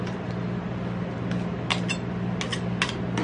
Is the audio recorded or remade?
recorded